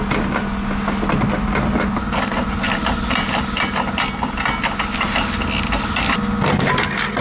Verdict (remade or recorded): recorded